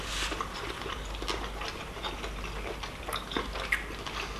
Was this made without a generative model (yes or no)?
yes